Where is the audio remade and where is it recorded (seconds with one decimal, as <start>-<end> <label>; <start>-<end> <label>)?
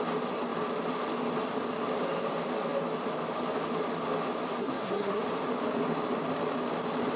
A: 0.0-4.6 recorded; 4.6-5.2 remade; 5.2-7.2 recorded